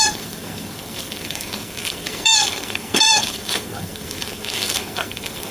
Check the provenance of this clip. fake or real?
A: fake